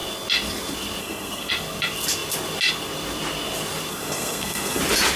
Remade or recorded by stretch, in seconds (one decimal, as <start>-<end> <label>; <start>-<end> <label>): 0.0-1.0 recorded; 1.0-1.5 remade; 1.5-3.9 recorded; 3.9-4.8 remade; 4.8-5.2 recorded